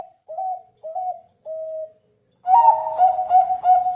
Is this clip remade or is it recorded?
recorded